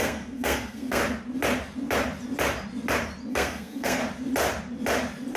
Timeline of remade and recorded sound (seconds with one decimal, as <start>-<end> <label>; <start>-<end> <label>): 0.0-1.0 remade; 1.0-3.3 recorded; 3.3-4.0 remade; 4.0-5.4 recorded